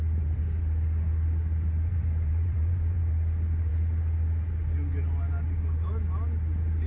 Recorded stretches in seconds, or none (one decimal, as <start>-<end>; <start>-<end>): 0.0-1.9; 3.1-6.9